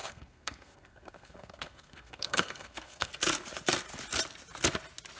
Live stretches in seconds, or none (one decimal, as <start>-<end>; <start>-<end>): 3.1-5.2